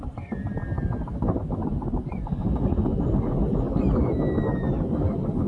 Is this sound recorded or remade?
recorded